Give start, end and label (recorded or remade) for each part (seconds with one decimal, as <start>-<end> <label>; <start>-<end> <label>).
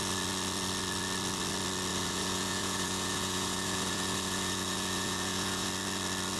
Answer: 0.0-1.9 recorded; 1.9-5.7 remade; 5.7-6.4 recorded